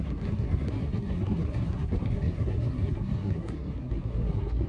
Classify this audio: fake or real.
fake